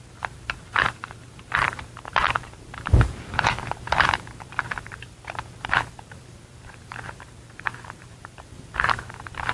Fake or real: fake